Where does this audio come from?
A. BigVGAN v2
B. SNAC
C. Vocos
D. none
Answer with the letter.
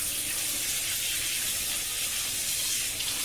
D